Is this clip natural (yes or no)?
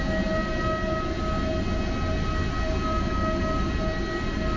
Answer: yes